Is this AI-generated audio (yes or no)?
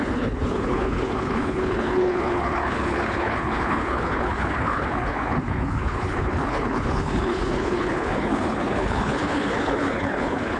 yes